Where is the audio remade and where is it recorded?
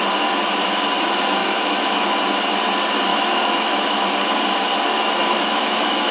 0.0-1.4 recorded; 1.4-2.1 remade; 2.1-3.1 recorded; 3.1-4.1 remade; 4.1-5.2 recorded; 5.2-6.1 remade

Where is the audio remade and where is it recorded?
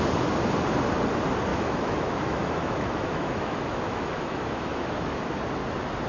0.0-1.5 recorded; 1.5-5.2 remade; 5.2-6.1 recorded